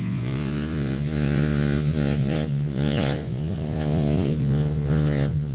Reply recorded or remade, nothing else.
remade